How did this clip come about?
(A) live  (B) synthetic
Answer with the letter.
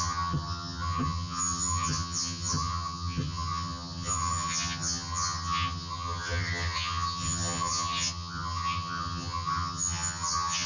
B